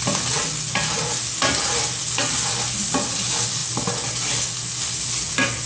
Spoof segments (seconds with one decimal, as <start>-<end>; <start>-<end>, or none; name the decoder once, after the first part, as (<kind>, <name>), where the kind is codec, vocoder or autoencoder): none